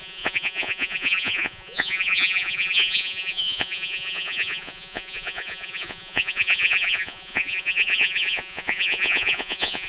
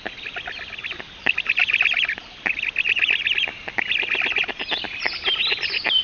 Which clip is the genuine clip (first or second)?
second